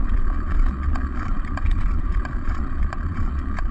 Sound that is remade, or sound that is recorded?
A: remade